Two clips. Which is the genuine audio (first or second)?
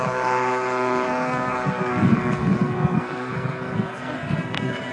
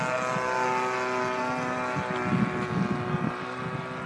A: second